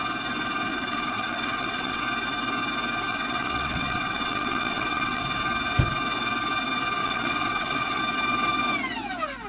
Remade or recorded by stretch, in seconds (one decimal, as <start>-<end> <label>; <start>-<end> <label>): 0.0-0.7 recorded; 0.7-2.0 remade; 2.0-3.1 recorded; 3.1-5.2 remade; 5.2-7.0 recorded; 7.0-8.0 remade; 8.0-9.5 recorded